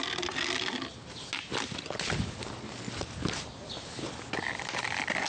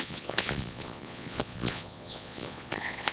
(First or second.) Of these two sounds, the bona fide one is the first